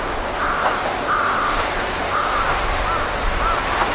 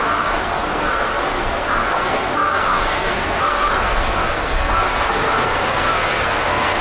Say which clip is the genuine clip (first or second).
first